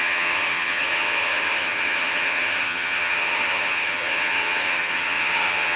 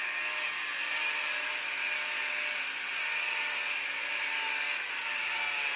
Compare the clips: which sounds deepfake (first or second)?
first